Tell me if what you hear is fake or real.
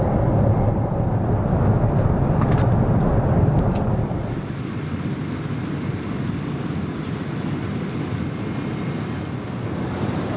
real